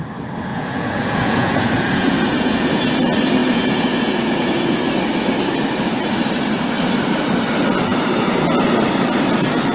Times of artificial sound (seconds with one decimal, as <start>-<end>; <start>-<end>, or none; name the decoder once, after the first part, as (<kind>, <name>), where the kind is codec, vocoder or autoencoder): 0.5-2.8 (vocoder, Vocos); 3.4-4.8